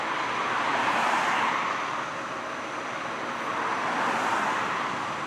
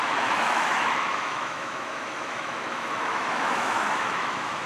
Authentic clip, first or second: first